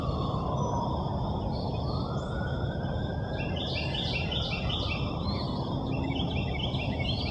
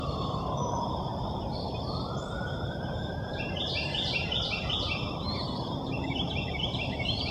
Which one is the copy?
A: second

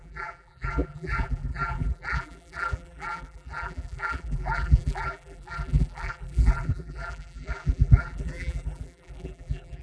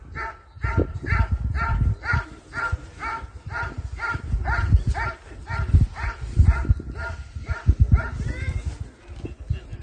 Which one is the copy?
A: first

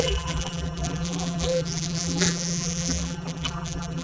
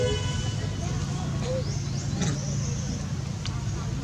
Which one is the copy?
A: first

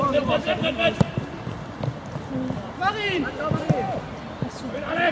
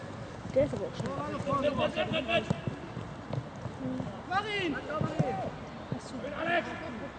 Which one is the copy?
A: first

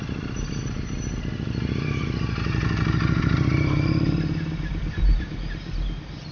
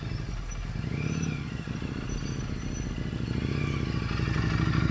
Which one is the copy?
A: first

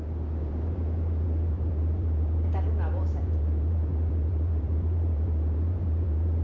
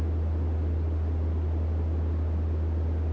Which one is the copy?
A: first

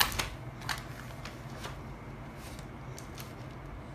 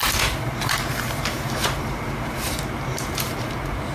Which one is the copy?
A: second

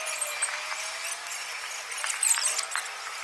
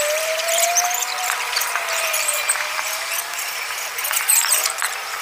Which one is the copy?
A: second